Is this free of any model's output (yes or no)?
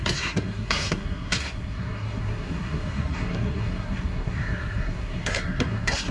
no